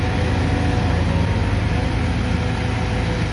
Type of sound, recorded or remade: recorded